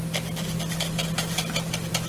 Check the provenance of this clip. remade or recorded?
recorded